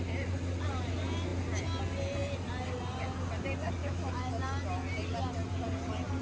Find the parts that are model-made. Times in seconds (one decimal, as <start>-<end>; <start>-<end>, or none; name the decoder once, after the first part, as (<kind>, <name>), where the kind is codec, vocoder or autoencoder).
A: 3.8-4.3 (autoencoder, DAC-VAE)